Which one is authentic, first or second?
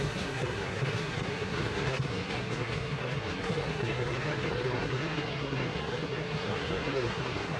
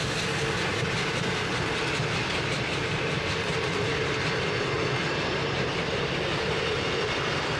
second